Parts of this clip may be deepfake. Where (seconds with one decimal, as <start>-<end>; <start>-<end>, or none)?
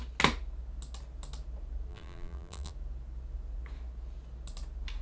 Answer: 1.9-2.7